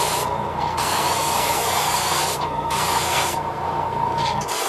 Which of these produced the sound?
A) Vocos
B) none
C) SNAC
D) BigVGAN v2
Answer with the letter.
C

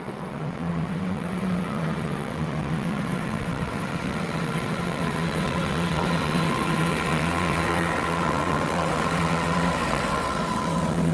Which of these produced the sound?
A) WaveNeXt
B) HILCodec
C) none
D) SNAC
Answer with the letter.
A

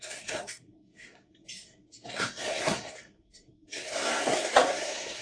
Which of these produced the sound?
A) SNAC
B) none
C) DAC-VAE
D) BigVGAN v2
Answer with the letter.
A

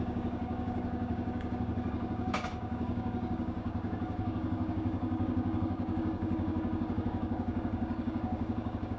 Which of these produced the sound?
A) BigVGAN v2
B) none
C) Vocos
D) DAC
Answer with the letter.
D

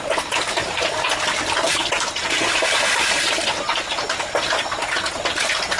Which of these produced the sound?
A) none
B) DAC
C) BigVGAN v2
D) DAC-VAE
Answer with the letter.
A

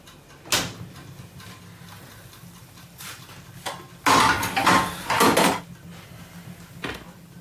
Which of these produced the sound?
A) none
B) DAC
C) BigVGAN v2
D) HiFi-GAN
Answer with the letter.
A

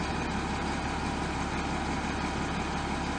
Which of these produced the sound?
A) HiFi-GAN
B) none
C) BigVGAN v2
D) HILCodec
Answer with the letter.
B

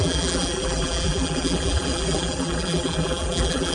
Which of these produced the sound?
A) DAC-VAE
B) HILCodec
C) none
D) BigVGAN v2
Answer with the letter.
D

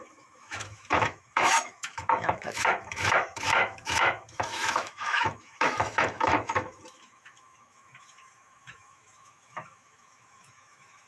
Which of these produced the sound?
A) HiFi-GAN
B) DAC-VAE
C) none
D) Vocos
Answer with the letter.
B